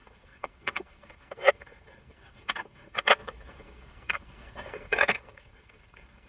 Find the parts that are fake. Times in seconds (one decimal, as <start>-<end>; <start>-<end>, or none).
0.0-6.3